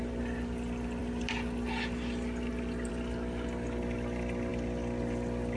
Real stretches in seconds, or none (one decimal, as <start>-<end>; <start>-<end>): 0.0-5.6